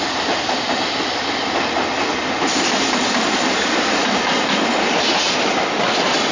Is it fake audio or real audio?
real